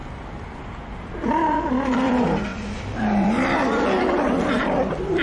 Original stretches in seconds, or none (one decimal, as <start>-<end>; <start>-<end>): none